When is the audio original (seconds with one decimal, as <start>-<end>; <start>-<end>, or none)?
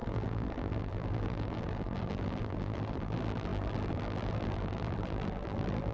none